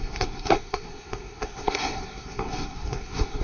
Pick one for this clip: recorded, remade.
remade